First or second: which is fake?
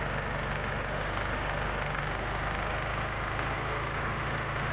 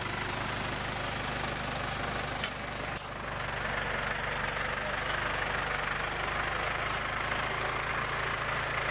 first